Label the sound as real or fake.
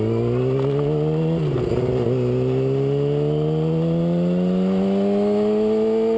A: real